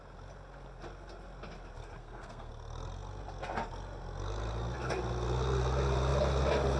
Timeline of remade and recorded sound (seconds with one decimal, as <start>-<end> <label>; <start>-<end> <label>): 0.0-2.0 recorded; 2.0-2.5 remade; 2.5-6.8 recorded